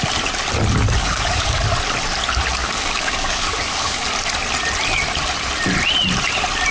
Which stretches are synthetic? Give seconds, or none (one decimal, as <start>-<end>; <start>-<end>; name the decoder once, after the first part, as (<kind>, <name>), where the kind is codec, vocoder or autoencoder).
1.0-1.6 (codec, DAC); 2.6-4.1